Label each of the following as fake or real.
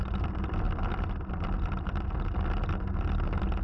real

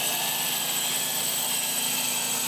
real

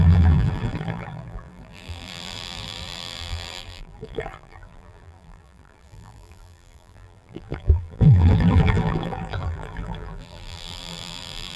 fake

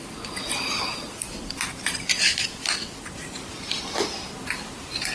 real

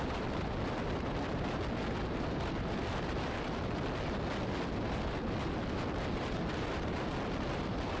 real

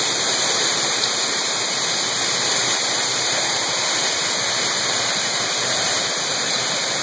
fake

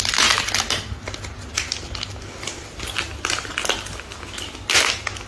real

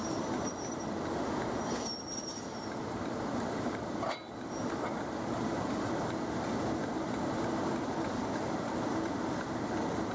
fake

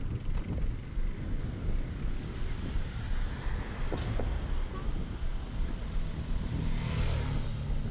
real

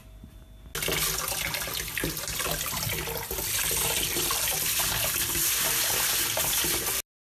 real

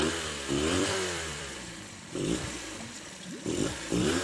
fake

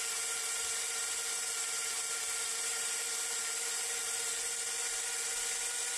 real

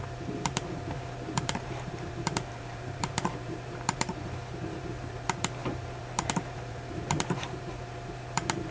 fake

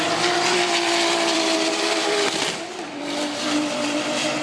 fake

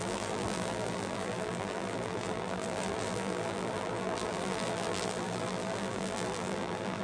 fake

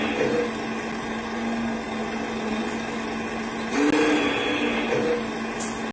real